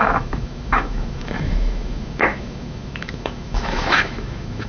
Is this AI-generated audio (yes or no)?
yes